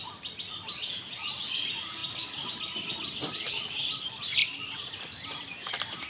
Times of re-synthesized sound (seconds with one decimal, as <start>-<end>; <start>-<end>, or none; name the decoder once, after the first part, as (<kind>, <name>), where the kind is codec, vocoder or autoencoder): none